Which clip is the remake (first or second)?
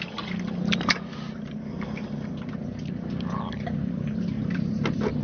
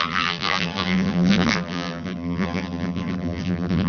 second